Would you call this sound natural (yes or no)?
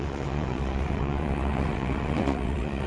no